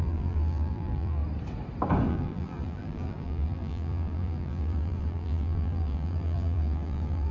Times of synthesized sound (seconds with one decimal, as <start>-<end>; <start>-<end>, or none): 0.0-1.2; 2.1-7.3